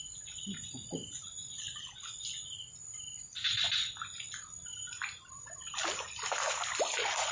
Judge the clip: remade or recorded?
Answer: recorded